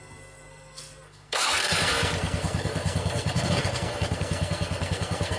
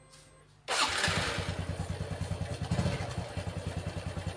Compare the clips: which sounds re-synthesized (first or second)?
first